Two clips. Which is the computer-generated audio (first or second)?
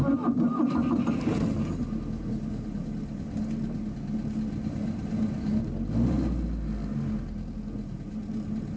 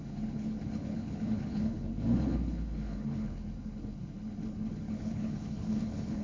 second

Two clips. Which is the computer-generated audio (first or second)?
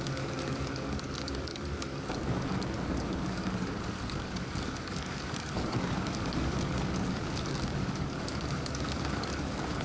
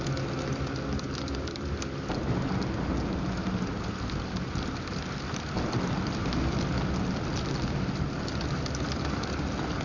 first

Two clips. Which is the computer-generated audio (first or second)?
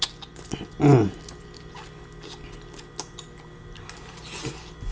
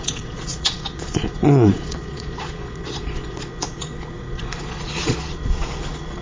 second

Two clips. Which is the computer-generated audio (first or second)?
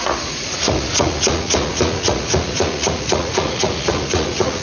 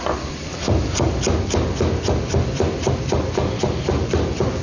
first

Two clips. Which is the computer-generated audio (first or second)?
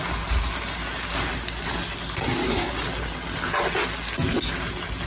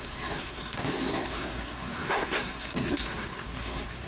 second